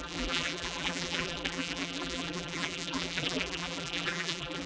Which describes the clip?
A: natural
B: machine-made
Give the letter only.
B